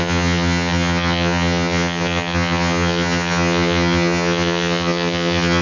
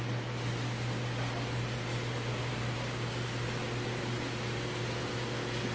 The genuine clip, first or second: second